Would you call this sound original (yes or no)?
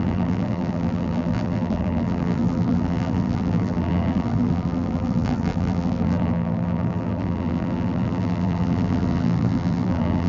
no